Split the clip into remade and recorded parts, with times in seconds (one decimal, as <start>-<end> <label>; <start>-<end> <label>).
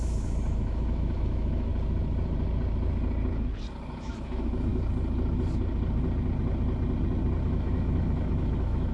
0.0-1.7 remade; 1.7-4.0 recorded; 4.0-4.7 remade; 4.7-7.4 recorded; 7.4-8.9 remade